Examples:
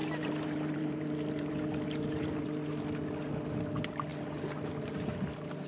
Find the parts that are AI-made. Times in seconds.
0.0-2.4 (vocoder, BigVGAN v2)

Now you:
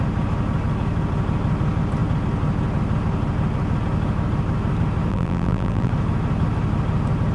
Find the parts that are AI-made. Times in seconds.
5.1-5.9 (vocoder, BigVGAN v2)

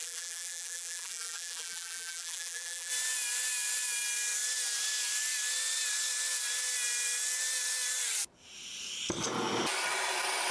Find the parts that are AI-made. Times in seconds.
0.0-2.9 (vocoder, BigVGAN v2)

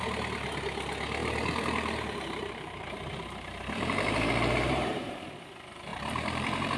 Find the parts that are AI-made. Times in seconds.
1.2-5.3 (vocoder, BigVGAN v2); 5.9-6.8

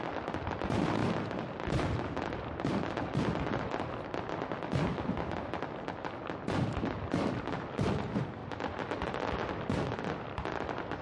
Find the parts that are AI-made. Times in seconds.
0.0-1.0 (vocoder, BigVGAN v2); 2.2-11.0

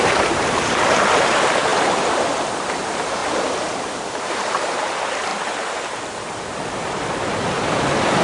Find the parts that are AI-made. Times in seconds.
0.0-3.2 (vocoder, BigVGAN v2); 4.1-5.3; 5.9-8.2

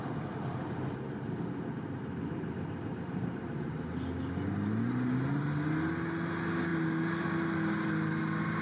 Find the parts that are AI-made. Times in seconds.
none